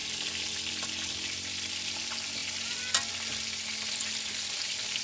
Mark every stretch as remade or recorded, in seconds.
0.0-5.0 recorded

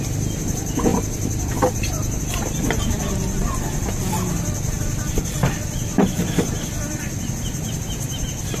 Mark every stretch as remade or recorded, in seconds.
0.0-0.9 recorded; 0.9-2.2 remade; 2.2-5.9 recorded; 5.9-7.3 remade; 7.3-8.6 recorded

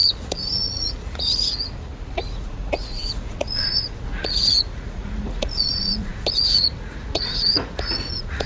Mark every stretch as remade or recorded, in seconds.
0.0-8.5 remade

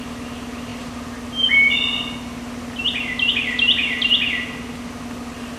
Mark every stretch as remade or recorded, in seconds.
0.0-0.7 remade; 0.7-3.3 recorded; 3.3-4.1 remade; 4.1-5.6 recorded

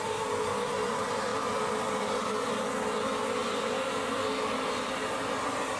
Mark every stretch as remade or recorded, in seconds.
0.0-1.3 recorded; 1.3-2.3 remade; 2.3-3.4 recorded; 3.4-5.8 remade

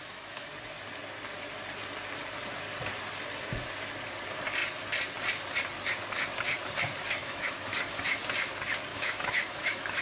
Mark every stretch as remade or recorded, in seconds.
0.0-0.5 remade; 0.5-7.2 recorded; 7.2-8.2 remade; 8.2-8.9 recorded; 8.9-10.0 remade

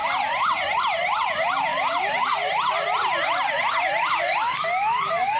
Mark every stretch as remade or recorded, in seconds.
0.0-5.4 recorded